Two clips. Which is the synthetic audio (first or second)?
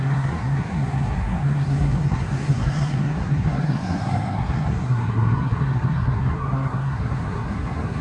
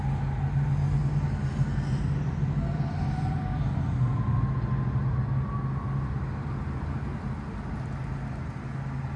first